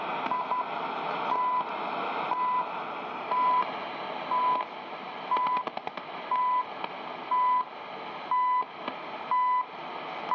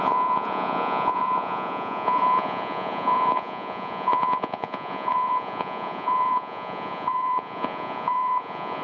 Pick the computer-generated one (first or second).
second